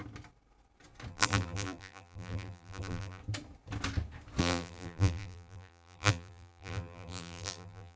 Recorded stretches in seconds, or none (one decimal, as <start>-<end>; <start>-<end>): 0.0-1.1; 3.2-4.4